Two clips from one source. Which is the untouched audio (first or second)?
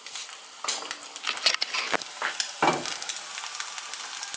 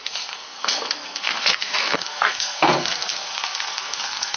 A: first